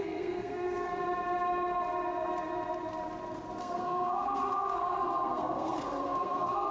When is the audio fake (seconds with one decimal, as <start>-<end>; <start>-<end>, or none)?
0.0-0.9; 3.6-6.7